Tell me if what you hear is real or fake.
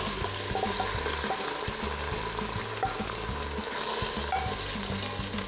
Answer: real